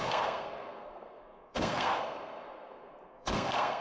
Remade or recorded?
remade